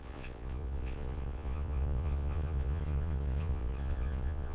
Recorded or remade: remade